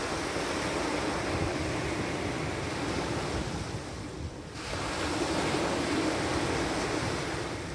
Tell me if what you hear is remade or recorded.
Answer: recorded